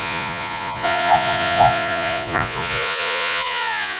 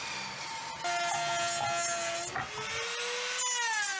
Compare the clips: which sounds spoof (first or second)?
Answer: first